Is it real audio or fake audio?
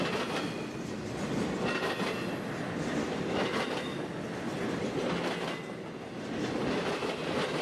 real